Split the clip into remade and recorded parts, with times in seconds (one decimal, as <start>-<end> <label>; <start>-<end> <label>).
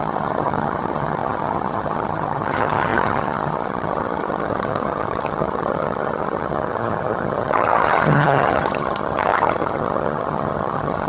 0.0-11.1 remade